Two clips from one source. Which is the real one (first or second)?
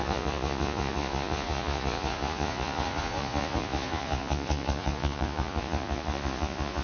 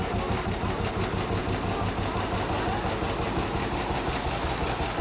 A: second